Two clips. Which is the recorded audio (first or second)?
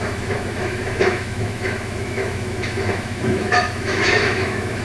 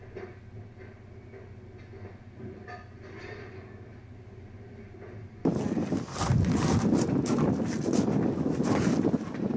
second